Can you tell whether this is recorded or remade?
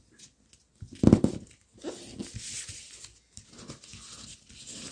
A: recorded